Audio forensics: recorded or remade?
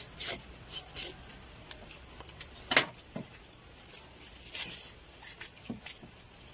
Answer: recorded